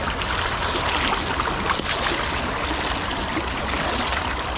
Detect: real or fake real